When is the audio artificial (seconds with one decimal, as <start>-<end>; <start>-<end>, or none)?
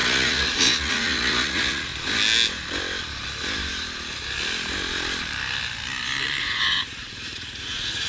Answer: 0.0-1.9; 6.4-8.1